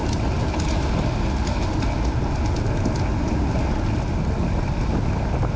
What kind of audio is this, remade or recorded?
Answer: recorded